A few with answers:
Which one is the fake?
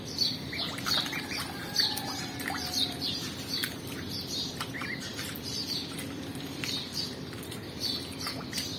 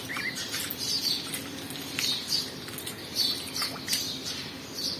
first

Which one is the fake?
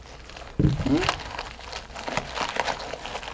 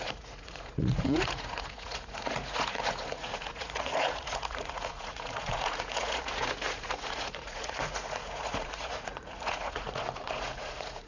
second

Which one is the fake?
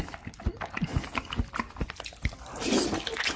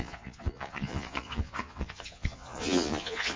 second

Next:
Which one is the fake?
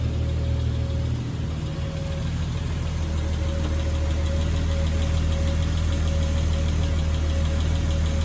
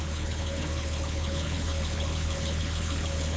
second